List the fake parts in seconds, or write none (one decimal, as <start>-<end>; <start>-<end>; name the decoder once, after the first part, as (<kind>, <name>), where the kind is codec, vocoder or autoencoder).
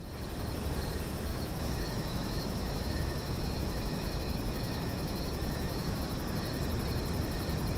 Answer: 1.3-6.0 (autoencoder, DAC-VAE)